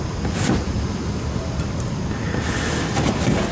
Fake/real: real